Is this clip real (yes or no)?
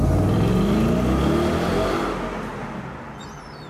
yes